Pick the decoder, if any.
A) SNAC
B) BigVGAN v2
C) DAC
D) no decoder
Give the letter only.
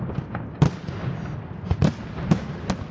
D